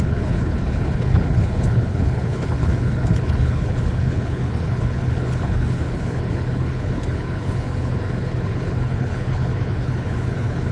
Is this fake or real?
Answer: fake